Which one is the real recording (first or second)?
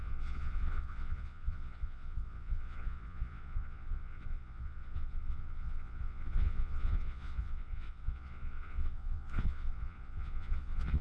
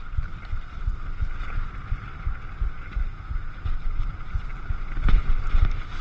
second